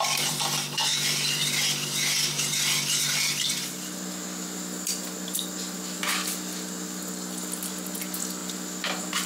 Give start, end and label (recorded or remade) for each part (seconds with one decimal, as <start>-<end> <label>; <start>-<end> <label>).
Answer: 0.0-9.3 recorded